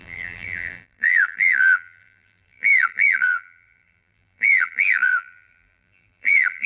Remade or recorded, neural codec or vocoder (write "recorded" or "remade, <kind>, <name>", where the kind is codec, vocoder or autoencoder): remade, vocoder, BigVGAN v2